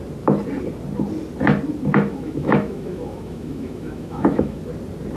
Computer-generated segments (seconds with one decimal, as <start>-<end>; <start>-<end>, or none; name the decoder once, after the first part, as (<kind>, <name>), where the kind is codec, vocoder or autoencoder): 1.9-4.6 (autoencoder, DAC-VAE)

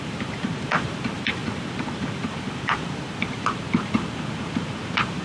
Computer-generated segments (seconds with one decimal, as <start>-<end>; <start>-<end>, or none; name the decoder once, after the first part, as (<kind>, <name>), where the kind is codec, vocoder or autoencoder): 0.0-5.2 (vocoder, BigVGAN v2)